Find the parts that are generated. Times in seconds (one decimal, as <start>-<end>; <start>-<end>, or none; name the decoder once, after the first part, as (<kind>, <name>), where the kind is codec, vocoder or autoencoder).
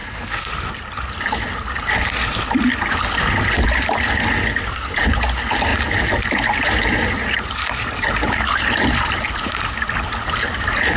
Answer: 0.0-0.5 (codec, SNAC)